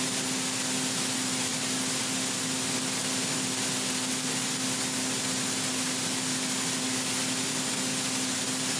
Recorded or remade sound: recorded